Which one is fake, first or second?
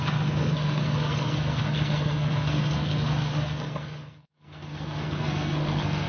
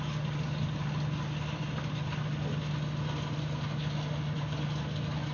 first